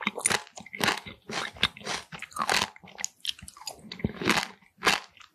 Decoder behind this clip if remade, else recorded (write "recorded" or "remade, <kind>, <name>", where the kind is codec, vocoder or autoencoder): recorded